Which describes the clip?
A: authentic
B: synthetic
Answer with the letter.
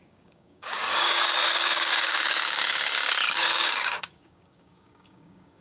B